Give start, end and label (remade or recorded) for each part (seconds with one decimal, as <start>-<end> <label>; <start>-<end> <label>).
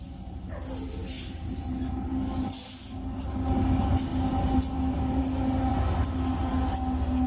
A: 0.0-7.3 recorded